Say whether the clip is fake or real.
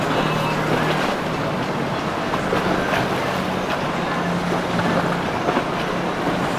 real